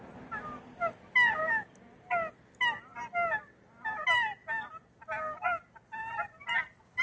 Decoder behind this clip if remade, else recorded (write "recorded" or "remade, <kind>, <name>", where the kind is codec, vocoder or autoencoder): recorded